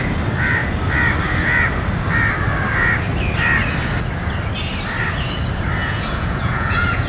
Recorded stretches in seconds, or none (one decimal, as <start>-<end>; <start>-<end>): 0.0-5.8